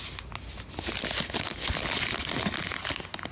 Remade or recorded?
recorded